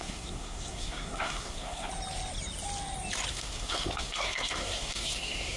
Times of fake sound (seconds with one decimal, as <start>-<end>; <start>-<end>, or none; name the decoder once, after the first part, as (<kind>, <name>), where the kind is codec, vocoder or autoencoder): 0.0-1.9 (codec, SNAC); 3.3-5.6